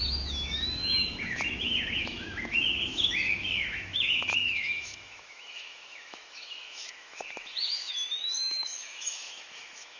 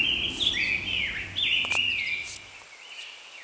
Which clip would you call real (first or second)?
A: second